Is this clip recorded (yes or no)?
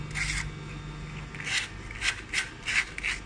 yes